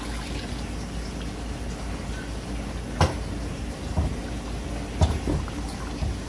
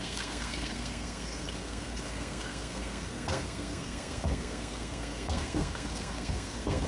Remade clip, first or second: second